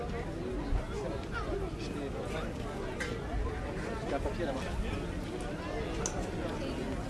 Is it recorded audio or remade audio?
recorded